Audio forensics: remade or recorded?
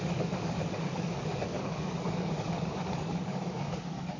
remade